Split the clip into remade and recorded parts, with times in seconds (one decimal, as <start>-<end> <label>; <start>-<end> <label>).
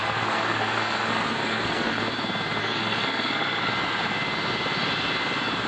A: 0.0-2.0 remade; 2.0-2.6 recorded; 2.6-3.7 remade; 3.7-5.7 recorded